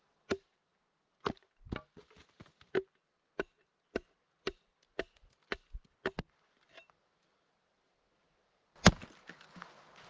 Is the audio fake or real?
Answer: real